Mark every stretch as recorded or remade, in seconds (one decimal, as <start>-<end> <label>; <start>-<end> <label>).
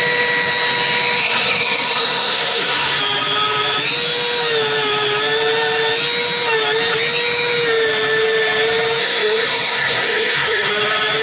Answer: 0.0-1.2 recorded; 1.2-3.0 remade; 3.0-9.0 recorded; 9.0-10.7 remade; 10.7-11.2 recorded